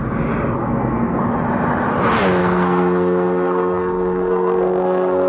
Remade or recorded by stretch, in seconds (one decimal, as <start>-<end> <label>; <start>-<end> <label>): 0.0-0.6 recorded; 0.6-1.2 remade; 1.2-2.4 recorded; 2.4-5.3 remade